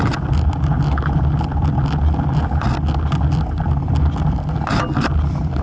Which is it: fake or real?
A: real